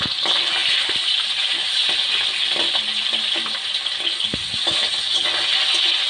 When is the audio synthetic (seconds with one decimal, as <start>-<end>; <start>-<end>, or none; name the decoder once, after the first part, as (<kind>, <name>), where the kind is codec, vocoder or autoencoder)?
none